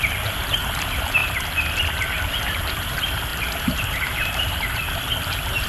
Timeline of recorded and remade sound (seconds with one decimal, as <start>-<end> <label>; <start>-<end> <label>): 0.0-3.3 recorded; 3.3-4.8 remade; 4.8-5.7 recorded